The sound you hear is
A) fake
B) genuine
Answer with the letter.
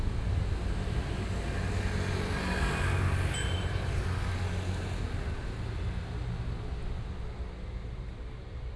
B